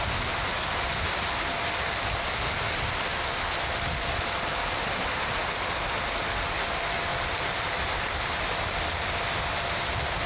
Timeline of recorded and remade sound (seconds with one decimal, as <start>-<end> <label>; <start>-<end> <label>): 0.0-7.1 recorded; 7.1-8.4 remade; 8.4-10.3 recorded